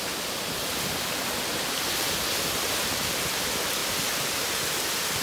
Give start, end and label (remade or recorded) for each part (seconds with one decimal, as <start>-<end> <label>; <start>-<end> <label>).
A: 0.0-5.2 recorded